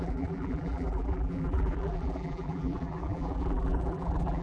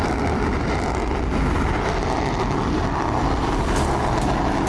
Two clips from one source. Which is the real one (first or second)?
second